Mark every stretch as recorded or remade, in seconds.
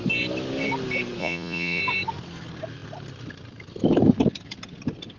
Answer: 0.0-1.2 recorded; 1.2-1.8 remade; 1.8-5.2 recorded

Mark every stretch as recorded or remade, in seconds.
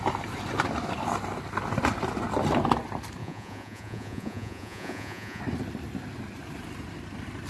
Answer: 0.0-3.2 recorded; 3.2-5.4 remade; 5.4-7.5 recorded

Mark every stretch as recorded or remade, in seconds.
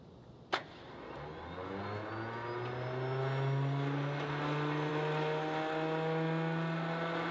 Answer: 0.0-7.3 recorded